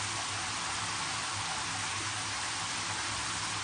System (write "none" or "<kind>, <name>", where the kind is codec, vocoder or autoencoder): none